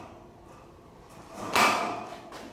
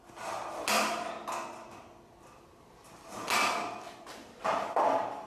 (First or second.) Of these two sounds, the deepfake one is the first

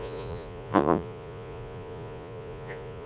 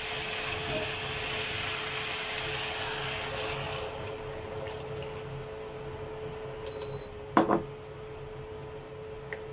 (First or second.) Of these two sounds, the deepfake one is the first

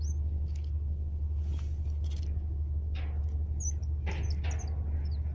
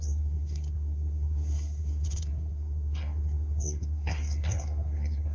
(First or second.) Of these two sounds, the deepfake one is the second